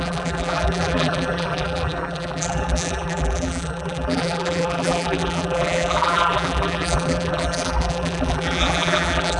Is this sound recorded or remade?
remade